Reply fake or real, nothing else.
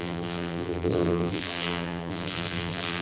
fake